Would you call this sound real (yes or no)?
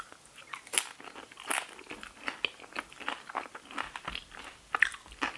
yes